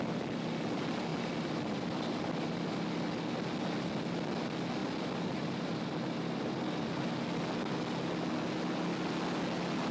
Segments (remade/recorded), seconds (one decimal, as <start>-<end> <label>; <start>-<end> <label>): 0.0-1.1 recorded; 1.1-2.8 remade; 2.8-4.8 recorded; 4.8-7.0 remade; 7.0-9.9 recorded